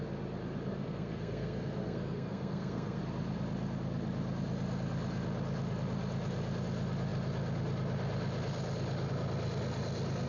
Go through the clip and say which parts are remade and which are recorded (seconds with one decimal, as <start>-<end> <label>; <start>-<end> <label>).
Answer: 0.0-0.7 recorded; 0.7-3.0 remade; 3.0-10.3 recorded